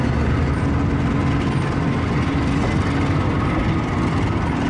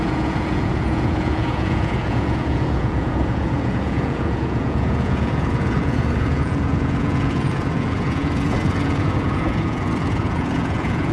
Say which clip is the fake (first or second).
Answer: second